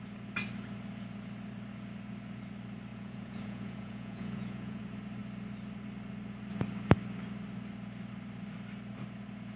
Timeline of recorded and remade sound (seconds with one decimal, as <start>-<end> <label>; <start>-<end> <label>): 0.0-2.9 recorded; 2.9-4.8 remade; 4.8-9.6 recorded